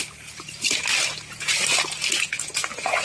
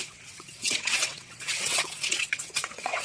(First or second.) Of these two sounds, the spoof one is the second